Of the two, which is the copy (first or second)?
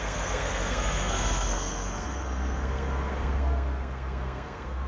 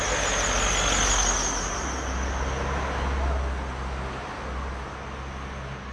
first